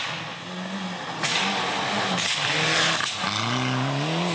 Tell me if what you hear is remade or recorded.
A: recorded